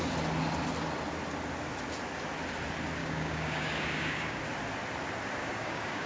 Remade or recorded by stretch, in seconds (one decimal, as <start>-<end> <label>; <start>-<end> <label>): 0.0-3.0 recorded; 3.0-4.4 remade; 4.4-5.4 recorded; 5.4-6.1 remade